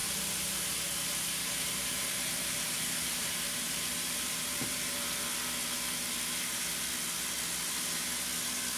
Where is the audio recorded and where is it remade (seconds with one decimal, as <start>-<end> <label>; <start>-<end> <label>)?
0.0-5.2 remade; 5.2-8.8 recorded

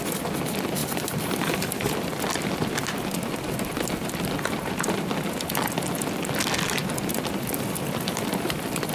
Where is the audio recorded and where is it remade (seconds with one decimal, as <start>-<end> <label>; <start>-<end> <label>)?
0.0-0.8 recorded; 0.8-1.5 remade; 1.5-8.9 recorded

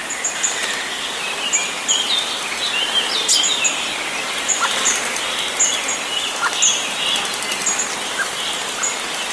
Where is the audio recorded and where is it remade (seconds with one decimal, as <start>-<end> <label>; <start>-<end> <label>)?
0.0-1.2 remade; 1.2-9.3 recorded

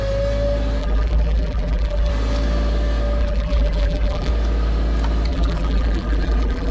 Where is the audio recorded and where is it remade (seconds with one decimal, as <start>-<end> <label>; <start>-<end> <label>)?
0.0-0.8 recorded; 0.8-2.1 remade; 2.1-3.2 recorded; 3.2-4.3 remade; 4.3-5.3 recorded; 5.3-6.7 remade

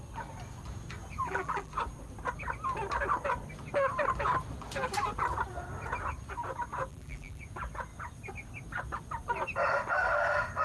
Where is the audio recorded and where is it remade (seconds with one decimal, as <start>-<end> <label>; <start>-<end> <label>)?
0.0-1.2 recorded; 1.2-1.7 remade; 1.7-6.9 recorded; 6.9-7.4 remade; 7.4-10.6 recorded